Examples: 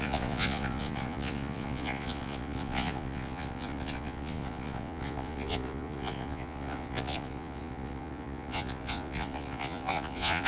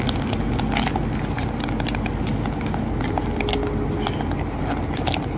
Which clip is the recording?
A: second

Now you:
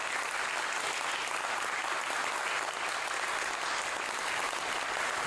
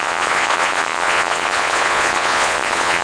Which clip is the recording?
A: first